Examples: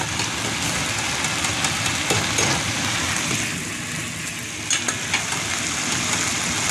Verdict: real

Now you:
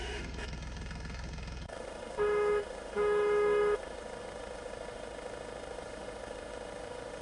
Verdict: fake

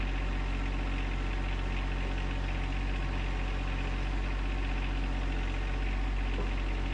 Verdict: real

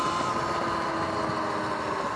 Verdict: real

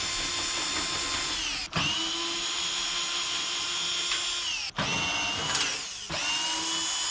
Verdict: real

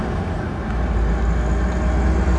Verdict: real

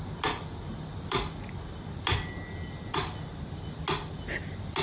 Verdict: real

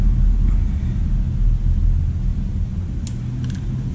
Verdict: real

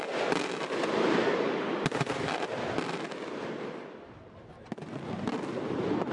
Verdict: real